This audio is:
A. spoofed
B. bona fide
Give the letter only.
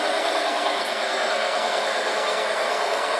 A